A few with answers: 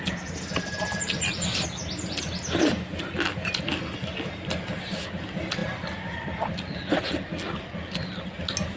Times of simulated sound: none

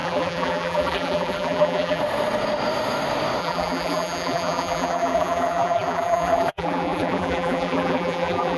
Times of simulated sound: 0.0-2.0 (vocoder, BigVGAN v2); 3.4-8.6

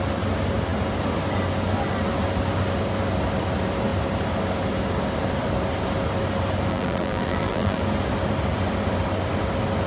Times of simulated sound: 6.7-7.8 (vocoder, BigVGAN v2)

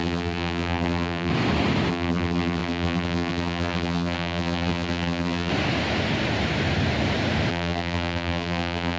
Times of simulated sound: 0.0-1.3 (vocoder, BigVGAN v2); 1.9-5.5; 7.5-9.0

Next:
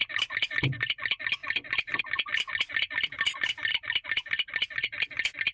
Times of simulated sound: 0.0-5.5 (vocoder, BigVGAN v2)

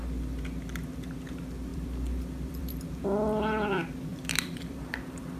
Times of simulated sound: 1.7-2.9 (vocoder, BigVGAN v2); 4.1-5.4